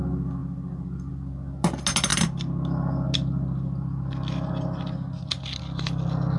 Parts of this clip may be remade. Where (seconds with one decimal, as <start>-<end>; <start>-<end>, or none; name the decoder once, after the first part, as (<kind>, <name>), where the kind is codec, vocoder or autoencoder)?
none